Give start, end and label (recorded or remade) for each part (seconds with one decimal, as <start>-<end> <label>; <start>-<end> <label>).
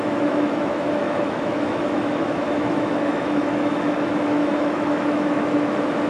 0.0-6.1 remade